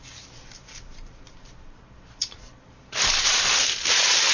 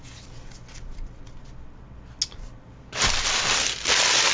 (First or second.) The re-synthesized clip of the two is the first